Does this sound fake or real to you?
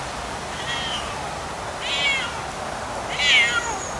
real